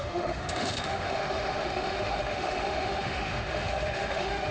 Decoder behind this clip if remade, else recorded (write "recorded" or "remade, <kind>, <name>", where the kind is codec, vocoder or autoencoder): remade, autoencoder, DAC-VAE